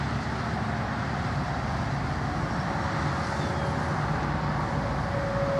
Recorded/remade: recorded